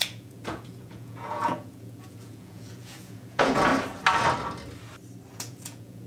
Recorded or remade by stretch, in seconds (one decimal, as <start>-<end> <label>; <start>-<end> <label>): 0.0-3.7 remade; 3.7-5.3 recorded; 5.3-6.1 remade